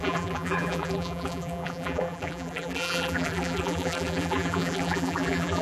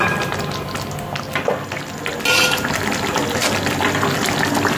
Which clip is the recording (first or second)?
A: second